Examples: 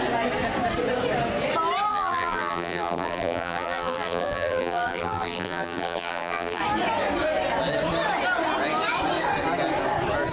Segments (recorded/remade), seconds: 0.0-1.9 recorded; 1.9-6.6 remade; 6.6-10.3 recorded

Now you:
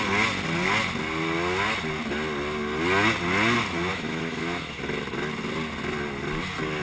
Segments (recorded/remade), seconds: 0.0-3.9 recorded; 3.9-4.8 remade; 4.8-6.8 recorded

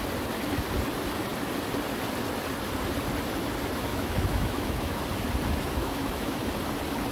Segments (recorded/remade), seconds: 0.0-3.9 recorded; 3.9-5.0 remade; 5.0-5.8 recorded; 5.8-6.5 remade; 6.5-7.1 recorded

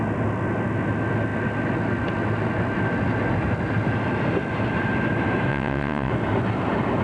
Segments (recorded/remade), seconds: 0.0-5.5 recorded; 5.5-6.1 remade; 6.1-7.0 recorded

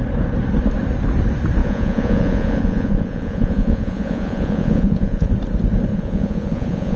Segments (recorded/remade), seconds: 0.0-1.6 recorded; 1.6-5.3 remade; 5.3-5.9 recorded; 5.9-7.0 remade

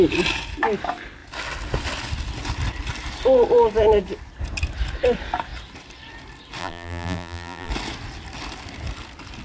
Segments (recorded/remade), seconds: 0.0-6.6 recorded; 6.6-7.7 remade; 7.7-9.4 recorded